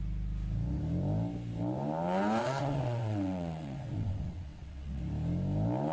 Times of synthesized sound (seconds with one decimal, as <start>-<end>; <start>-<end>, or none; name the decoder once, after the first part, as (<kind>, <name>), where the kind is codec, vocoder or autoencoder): 2.4-5.0 (vocoder, WaveNeXt)